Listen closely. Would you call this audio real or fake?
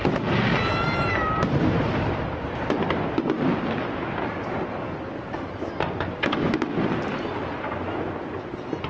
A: real